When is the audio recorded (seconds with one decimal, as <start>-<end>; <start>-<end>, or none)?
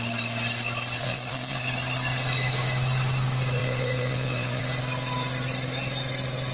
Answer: 0.0-1.0; 1.6-3.6; 4.6-6.5